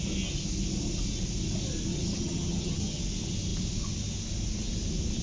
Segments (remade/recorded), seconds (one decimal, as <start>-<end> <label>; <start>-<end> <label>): 0.0-1.9 recorded; 1.9-3.0 remade; 3.0-5.2 recorded